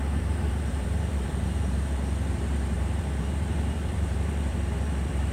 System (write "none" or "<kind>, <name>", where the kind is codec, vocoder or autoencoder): vocoder, BigVGAN v2